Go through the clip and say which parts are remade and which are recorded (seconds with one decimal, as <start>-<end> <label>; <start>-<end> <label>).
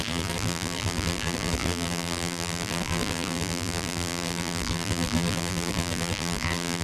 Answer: 0.0-6.8 remade